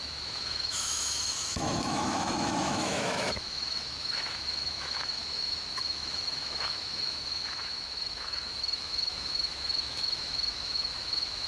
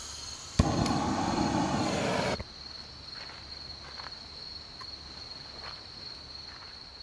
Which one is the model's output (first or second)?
first